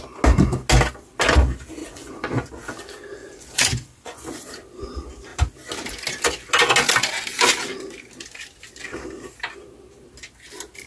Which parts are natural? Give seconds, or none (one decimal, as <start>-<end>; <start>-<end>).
0.0-1.8; 2.5-3.2; 4.5-10.9